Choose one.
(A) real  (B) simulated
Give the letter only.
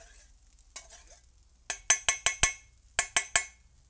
A